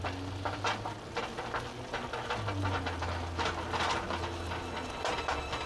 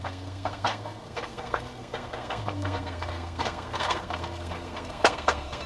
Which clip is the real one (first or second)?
first